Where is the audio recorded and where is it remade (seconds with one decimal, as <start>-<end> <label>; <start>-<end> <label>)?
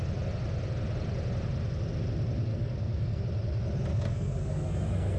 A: 0.0-2.5 recorded; 2.5-3.2 remade; 3.2-3.9 recorded; 3.9-5.2 remade